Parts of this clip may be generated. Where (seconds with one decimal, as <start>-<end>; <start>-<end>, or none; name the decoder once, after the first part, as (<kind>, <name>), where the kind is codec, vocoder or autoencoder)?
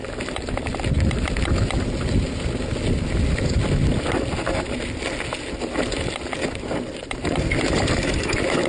none